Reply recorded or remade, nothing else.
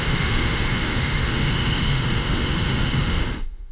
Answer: remade